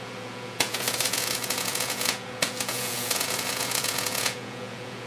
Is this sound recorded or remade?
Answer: remade